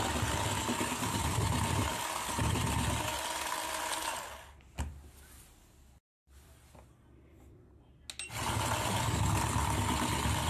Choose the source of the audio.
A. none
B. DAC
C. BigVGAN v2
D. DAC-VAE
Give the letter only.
A